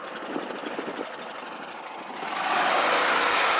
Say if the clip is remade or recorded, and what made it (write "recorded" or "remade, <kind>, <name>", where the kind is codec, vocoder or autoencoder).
recorded